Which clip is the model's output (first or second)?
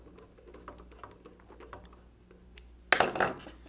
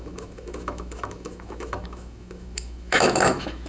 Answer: second